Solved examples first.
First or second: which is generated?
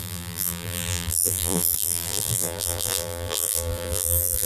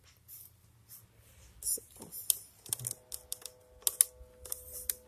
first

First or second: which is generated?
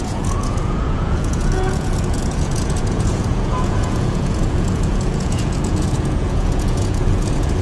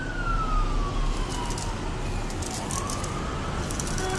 first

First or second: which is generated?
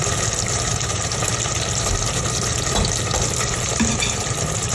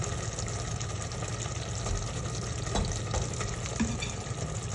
first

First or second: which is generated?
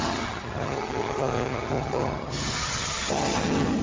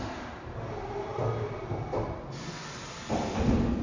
first